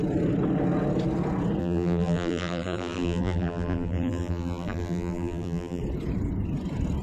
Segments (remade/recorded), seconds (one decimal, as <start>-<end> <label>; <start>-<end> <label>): 0.0-1.6 recorded; 1.6-5.8 remade; 5.8-7.0 recorded